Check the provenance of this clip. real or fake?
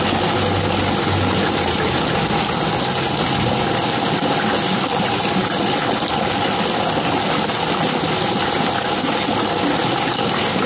real